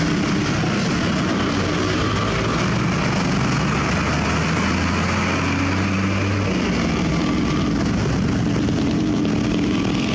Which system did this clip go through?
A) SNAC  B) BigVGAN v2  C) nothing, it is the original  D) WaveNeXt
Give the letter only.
C